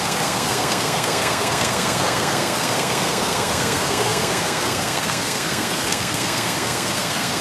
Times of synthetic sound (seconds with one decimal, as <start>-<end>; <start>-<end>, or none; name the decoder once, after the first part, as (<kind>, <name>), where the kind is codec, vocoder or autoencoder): 0.0-7.4 (codec, SNAC)